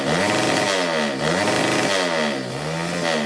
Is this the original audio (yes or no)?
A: yes